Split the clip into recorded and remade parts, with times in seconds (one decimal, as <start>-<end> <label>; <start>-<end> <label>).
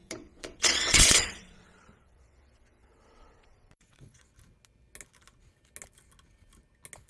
0.0-4.3 remade; 4.3-7.1 recorded